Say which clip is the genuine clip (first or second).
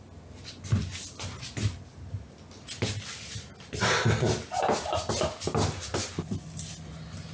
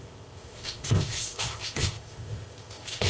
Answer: first